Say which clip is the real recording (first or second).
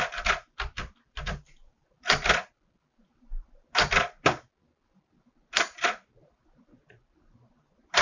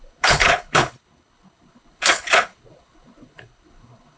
first